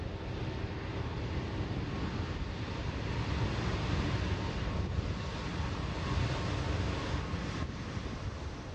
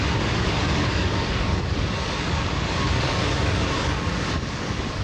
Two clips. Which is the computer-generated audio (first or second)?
second